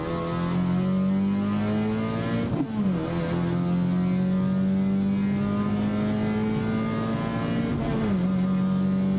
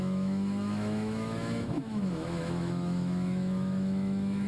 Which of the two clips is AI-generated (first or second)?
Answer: second